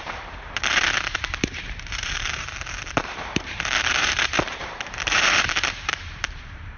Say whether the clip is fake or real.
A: fake